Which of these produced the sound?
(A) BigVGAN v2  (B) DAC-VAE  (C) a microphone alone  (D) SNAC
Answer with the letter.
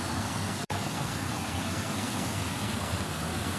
D